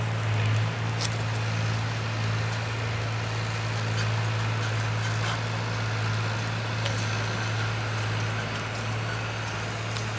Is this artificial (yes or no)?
no